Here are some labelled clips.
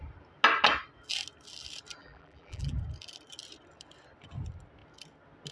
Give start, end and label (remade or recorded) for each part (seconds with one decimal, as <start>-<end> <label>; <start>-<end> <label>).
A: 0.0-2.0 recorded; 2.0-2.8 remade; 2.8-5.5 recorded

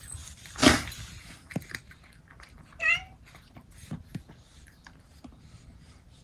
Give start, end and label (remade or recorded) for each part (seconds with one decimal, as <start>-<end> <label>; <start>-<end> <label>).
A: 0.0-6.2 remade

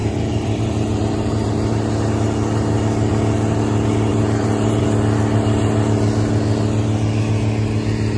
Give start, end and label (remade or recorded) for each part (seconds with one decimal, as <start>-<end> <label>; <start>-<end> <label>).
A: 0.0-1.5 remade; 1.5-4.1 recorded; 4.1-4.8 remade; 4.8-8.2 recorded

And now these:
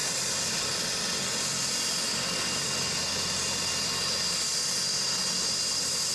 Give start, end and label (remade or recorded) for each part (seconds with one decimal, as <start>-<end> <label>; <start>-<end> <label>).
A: 0.0-6.1 recorded